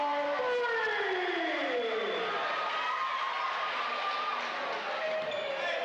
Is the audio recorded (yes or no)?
yes